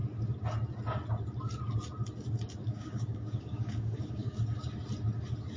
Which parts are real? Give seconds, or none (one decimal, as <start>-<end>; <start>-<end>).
0.0-2.6; 4.4-5.6